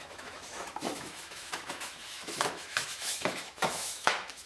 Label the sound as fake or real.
fake